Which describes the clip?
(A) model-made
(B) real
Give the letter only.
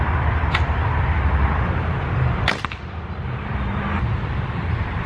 A